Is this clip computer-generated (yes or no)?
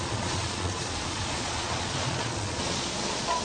yes